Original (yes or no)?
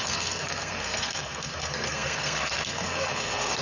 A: no